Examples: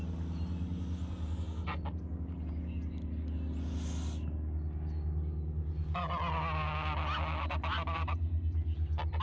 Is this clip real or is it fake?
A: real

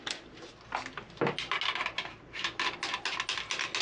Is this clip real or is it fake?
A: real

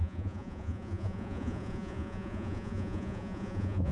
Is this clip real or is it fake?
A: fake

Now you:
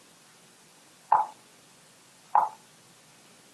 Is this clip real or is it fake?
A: fake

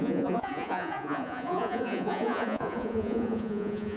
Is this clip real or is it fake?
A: fake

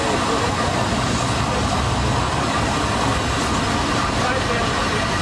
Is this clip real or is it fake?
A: real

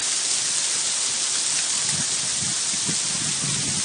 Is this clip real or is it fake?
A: real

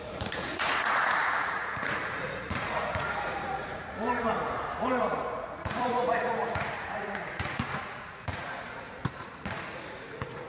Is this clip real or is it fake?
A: fake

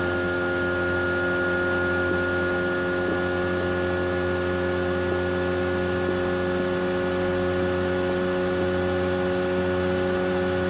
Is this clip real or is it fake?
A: real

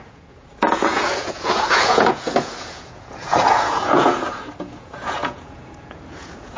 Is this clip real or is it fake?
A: fake